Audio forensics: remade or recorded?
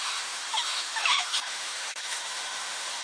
remade